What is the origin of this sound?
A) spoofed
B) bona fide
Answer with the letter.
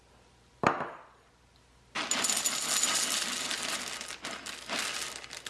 B